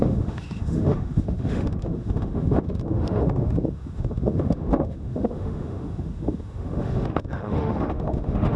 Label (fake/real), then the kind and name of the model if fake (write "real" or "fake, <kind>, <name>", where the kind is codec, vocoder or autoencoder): fake, autoencoder, DAC-VAE